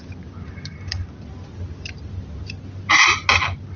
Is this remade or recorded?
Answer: recorded